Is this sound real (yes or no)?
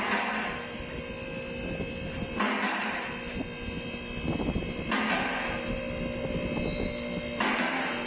yes